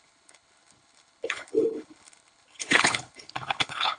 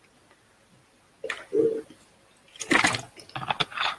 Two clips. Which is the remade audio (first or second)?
first